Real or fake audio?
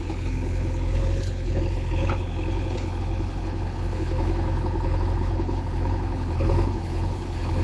fake